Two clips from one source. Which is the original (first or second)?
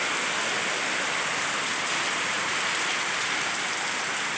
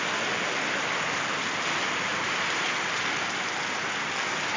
second